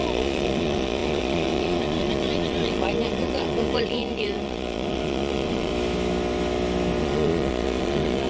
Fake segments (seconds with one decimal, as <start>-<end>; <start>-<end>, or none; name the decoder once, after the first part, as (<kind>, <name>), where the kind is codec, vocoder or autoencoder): 0.0-5.7 (vocoder, Vocos); 7.0-8.3